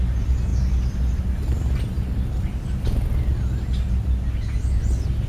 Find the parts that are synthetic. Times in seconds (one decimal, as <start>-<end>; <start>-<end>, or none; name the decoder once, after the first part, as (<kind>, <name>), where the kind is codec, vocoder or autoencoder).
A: none